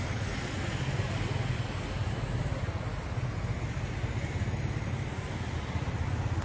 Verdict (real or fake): real